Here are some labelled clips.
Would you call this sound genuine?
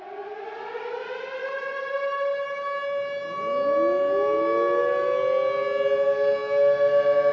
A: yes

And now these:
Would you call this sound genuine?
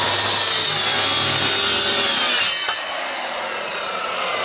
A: yes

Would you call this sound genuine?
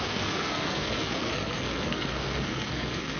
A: no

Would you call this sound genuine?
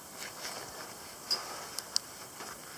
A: yes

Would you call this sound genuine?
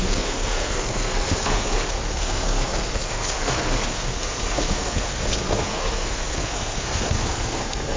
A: no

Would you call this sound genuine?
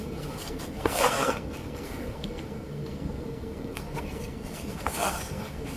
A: no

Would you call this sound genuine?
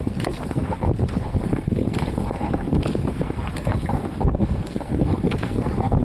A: no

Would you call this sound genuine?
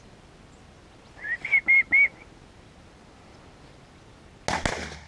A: yes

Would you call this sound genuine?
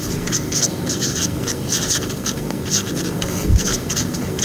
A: no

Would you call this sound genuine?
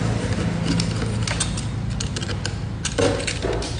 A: yes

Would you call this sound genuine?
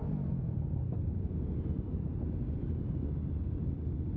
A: yes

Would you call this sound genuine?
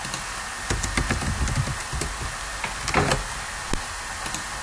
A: yes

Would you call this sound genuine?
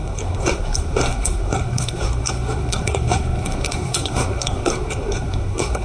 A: no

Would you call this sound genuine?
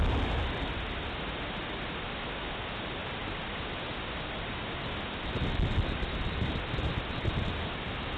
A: yes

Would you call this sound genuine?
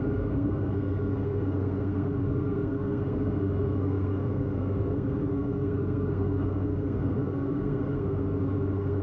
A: no